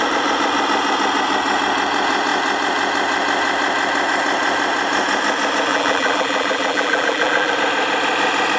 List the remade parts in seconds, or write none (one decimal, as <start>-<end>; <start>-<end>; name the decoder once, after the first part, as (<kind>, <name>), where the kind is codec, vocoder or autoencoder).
5.7-7.5 (vocoder, BigVGAN v2)